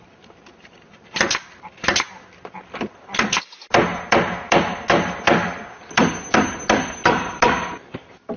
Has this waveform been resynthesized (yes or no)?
no